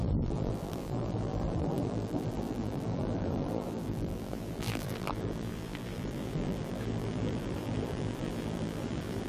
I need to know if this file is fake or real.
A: fake